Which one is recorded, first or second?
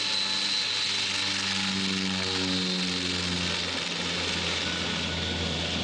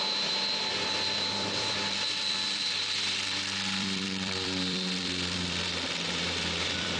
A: first